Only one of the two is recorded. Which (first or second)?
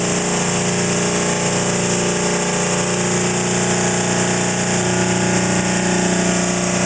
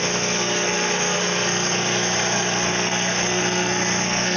first